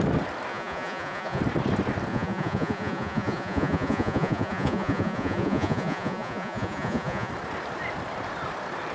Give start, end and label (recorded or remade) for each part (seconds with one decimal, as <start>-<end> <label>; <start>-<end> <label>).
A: 0.0-0.5 recorded; 0.5-1.4 remade; 1.4-2.1 recorded; 2.1-7.3 remade; 7.3-8.9 recorded